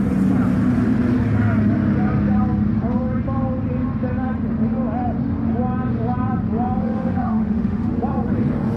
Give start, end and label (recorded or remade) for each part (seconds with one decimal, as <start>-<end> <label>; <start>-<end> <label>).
0.0-6.8 recorded; 6.8-7.9 remade; 7.9-8.8 recorded